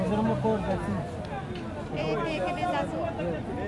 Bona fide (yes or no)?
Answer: yes